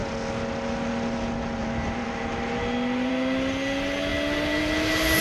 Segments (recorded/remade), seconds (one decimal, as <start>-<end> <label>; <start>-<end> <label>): 0.0-5.2 recorded